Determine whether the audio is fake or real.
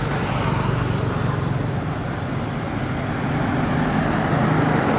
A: real